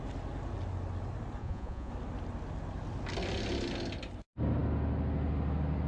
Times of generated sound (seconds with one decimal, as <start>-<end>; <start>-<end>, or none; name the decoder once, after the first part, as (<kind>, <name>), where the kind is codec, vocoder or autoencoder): 1.4-1.9 (vocoder, Vocos)